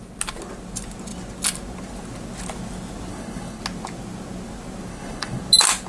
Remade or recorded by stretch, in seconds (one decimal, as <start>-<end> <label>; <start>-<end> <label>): 0.0-3.1 recorded; 3.1-3.6 remade; 3.6-4.9 recorded; 4.9-5.4 remade; 5.4-5.9 recorded